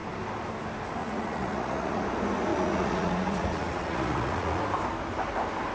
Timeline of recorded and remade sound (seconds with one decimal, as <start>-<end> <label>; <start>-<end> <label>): 0.0-1.0 recorded; 1.0-2.0 remade; 2.0-2.5 recorded; 2.5-4.6 remade; 4.6-5.7 recorded